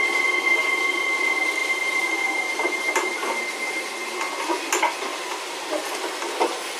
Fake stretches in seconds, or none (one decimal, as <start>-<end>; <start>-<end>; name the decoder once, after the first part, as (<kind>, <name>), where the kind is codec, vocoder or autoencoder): 0.5-1.2 (vocoder, BigVGAN v2); 1.6-3.9; 5.1-5.9